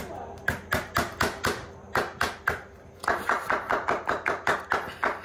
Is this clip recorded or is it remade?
recorded